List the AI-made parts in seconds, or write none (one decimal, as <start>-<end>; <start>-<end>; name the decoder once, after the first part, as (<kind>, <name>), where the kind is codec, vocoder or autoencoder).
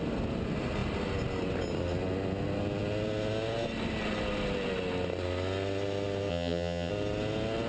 6.3-6.9 (vocoder, HiFi-GAN)